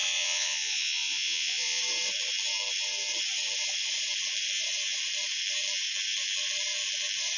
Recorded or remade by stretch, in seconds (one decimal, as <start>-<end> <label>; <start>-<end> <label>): 0.0-1.8 remade; 1.8-7.4 recorded